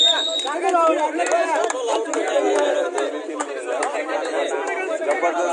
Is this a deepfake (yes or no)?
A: no